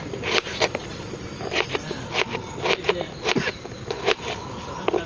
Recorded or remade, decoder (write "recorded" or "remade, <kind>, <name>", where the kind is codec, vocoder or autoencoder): recorded